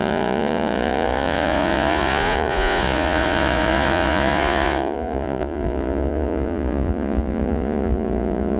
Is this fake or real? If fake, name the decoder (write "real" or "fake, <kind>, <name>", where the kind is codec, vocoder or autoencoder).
fake, vocoder, Vocos